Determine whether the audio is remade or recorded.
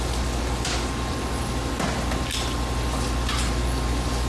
recorded